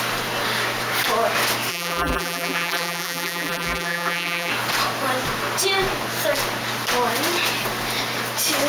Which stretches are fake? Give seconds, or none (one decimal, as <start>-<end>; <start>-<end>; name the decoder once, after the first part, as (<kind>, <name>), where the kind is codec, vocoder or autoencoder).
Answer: 1.7-4.5 (vocoder, BigVGAN v2)

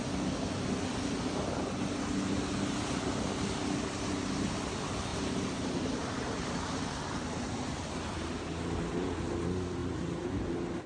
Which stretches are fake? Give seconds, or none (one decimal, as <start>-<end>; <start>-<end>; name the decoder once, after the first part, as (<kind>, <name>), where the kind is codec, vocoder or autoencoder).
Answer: 5.1-6.5 (vocoder, BigVGAN v2)

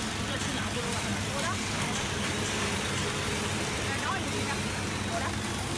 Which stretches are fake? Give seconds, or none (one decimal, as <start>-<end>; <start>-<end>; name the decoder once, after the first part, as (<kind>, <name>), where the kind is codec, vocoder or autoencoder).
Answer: 0.5-2.3 (vocoder, BigVGAN v2)

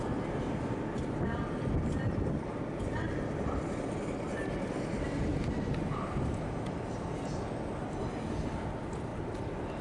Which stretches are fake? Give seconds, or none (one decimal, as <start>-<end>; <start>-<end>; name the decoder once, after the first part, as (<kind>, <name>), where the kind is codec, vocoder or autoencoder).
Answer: none

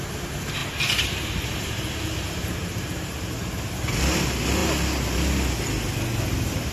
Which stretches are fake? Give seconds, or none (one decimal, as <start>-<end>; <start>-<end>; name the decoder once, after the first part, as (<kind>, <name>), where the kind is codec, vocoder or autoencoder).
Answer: none

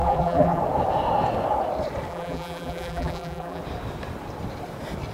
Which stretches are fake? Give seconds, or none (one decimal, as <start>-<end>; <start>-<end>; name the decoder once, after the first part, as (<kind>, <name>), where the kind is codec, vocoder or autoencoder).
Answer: 0.0-0.6 (vocoder, BigVGAN v2); 2.1-3.6

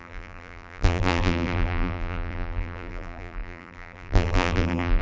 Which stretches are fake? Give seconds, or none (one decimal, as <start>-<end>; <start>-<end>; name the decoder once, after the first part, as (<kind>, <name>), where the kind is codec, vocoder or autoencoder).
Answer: 0.0-5.0 (vocoder, BigVGAN v2)